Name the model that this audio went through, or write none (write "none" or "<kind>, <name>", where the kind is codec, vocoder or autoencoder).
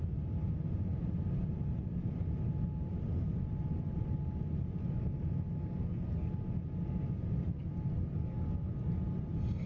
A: none